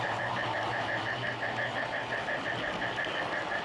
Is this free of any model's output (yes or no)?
yes